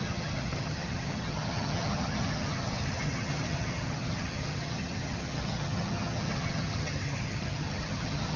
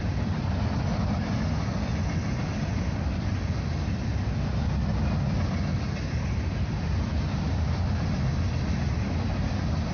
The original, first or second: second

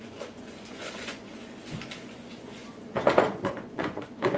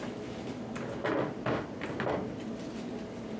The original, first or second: second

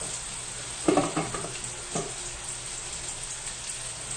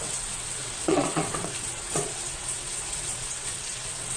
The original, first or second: first